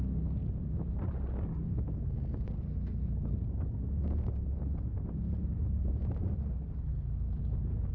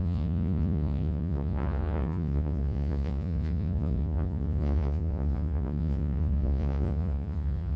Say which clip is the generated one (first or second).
second